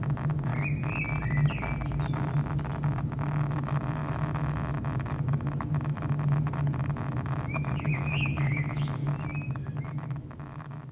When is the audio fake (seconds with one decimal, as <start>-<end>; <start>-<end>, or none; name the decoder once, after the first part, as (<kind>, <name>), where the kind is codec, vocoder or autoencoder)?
0.0-0.5 (autoencoder, DAC-VAE); 3.5-9.0; 9.5-10.9